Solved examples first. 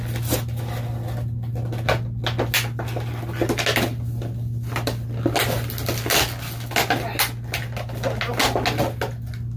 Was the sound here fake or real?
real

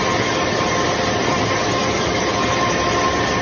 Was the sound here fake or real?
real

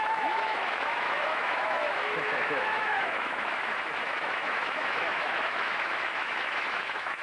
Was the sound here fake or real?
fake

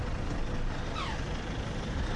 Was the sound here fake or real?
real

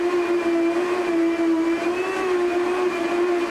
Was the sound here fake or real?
real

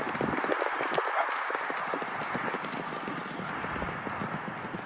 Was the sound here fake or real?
real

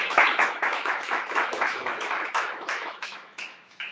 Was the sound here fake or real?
fake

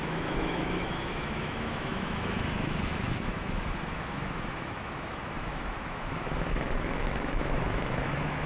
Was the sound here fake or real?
fake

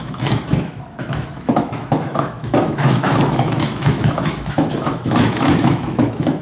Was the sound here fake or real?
fake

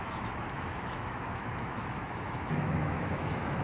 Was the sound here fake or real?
fake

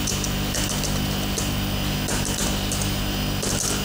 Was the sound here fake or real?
real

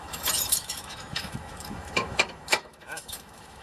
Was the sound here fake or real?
fake